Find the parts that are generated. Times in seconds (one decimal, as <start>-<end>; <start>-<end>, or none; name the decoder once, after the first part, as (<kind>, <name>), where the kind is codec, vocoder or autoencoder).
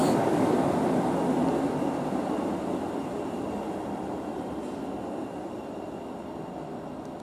0.0-0.5 (codec, DAC)